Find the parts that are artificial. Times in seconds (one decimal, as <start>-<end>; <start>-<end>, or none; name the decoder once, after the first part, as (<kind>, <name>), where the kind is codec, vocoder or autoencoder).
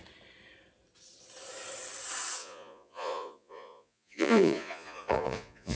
2.4-5.8 (vocoder, Vocos)